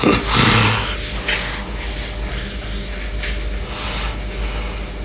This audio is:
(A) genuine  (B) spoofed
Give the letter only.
A